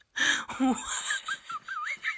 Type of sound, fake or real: real